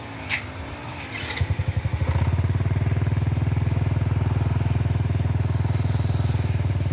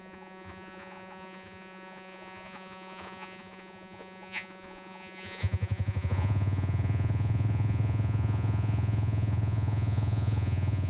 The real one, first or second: first